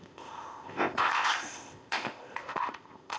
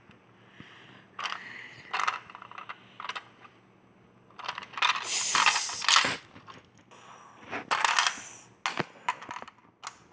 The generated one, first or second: first